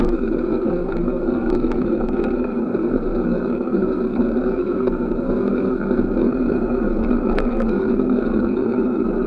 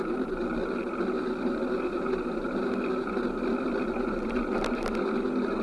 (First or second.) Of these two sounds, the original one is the second